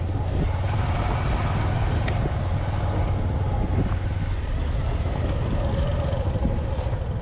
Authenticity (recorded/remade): recorded